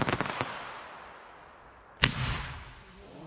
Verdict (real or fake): fake